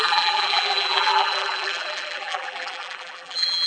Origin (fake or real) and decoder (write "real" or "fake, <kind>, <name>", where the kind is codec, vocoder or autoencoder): fake, vocoder, BigVGAN v2